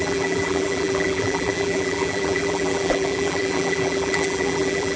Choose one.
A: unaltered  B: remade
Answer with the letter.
B